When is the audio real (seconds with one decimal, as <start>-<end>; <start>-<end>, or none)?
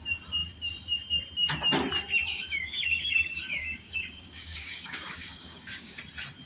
0.0-2.3; 6.0-6.5